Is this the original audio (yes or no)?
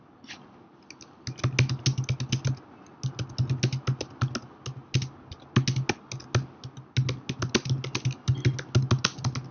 yes